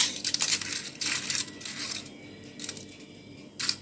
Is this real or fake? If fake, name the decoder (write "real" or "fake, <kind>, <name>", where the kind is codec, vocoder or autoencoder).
real